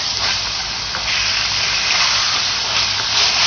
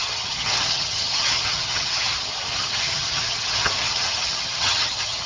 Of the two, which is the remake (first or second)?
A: second